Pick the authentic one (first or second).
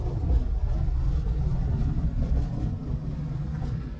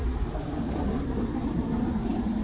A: first